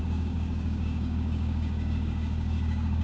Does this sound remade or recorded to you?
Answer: remade